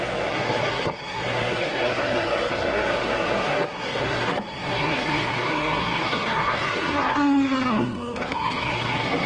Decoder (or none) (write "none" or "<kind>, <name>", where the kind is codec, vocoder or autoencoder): codec, SNAC